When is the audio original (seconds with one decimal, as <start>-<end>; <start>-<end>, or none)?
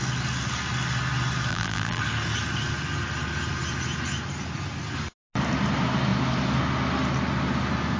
0.0-1.5; 2.0-8.0